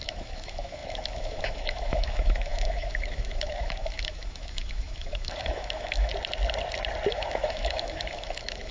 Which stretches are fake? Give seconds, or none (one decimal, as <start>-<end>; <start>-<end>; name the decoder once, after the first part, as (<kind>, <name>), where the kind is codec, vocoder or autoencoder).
0.0-6.1 (autoencoder, DAC-VAE); 7.1-8.7